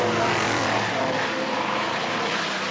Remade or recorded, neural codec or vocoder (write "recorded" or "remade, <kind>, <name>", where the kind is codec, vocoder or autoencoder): remade, vocoder, BigVGAN v2